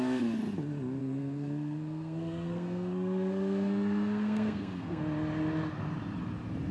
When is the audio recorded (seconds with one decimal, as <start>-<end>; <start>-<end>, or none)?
0.0-1.0; 5.0-6.7